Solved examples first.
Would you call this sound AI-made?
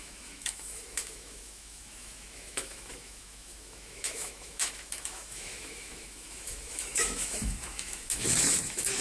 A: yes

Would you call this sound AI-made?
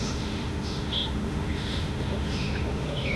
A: yes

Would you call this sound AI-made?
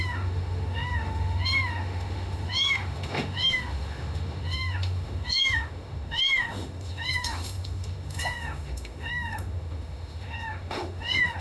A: yes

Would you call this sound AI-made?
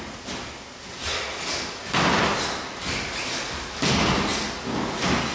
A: no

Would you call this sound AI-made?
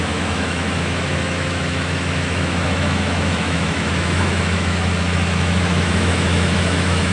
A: yes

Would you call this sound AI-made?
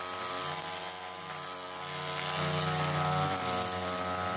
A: no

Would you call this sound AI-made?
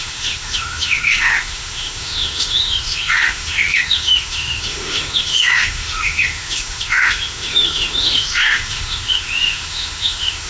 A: yes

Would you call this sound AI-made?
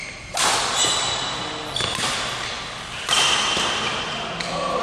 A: no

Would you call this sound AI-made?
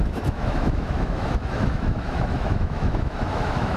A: yes